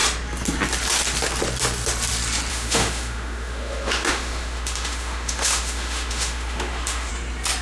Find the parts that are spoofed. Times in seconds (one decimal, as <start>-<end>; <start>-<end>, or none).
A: 2.5-7.1